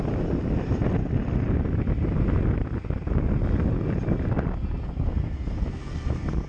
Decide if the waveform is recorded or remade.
recorded